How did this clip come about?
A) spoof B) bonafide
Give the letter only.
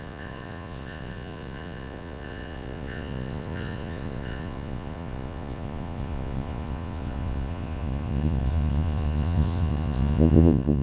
A